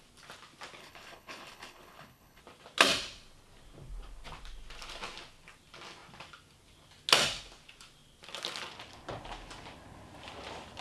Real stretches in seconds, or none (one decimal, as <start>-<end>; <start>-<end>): 0.0-0.8; 2.4-10.8